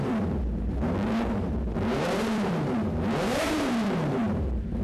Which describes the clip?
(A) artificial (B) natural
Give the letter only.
A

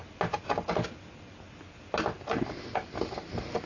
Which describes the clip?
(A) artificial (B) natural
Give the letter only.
B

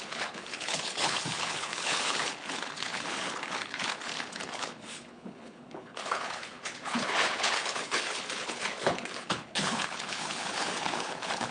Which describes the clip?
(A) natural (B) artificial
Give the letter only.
B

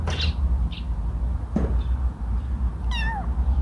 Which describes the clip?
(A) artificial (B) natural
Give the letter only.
B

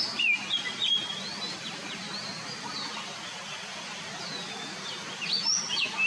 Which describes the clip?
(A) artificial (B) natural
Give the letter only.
B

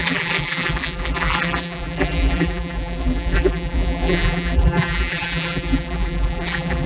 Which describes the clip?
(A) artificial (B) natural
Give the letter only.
A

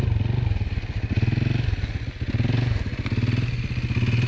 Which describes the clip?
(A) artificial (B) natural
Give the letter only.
B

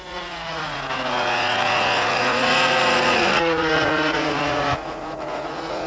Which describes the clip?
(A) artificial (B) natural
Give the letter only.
A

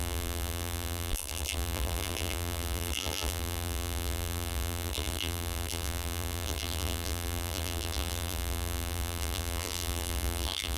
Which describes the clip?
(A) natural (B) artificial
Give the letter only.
B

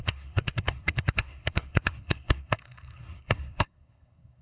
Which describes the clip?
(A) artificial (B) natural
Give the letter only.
A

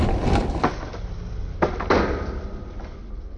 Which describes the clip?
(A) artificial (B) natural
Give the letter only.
B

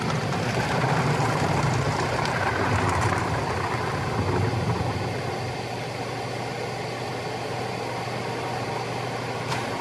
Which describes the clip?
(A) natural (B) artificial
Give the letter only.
A